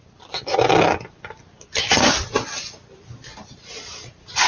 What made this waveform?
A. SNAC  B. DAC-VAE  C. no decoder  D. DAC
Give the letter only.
C